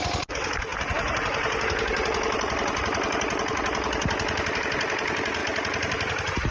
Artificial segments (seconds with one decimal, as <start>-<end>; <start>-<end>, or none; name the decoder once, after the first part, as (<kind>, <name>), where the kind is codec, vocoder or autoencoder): none